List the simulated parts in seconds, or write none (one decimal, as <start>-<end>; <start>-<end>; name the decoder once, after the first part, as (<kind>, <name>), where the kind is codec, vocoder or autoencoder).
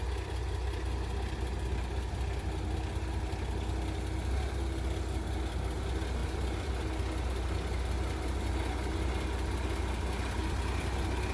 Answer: 6.2-6.7 (vocoder, BigVGAN v2)